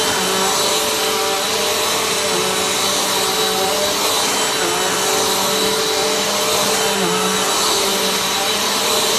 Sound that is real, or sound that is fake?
real